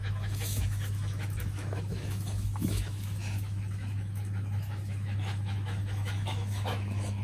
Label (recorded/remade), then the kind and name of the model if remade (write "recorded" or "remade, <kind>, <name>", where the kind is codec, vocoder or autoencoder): remade, autoencoder, DAC-VAE